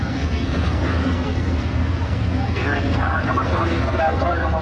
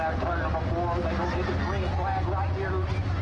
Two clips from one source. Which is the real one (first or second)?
second